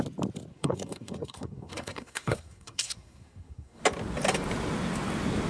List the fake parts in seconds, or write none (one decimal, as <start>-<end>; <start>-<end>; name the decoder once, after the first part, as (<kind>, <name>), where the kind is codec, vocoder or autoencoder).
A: 0.5-3.8 (codec, SNAC)